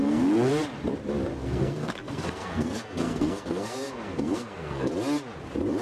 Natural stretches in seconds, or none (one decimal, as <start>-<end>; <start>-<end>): 0.5-1.4; 4.9-5.8